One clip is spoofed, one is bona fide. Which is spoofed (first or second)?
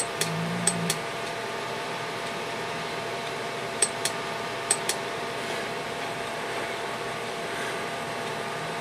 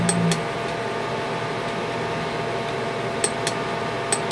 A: first